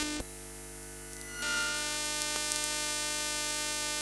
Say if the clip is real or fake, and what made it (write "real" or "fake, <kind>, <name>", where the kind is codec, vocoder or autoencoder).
real